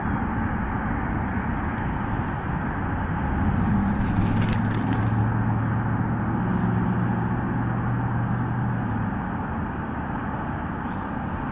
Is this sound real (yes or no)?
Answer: yes